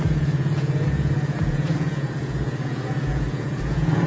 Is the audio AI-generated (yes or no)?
yes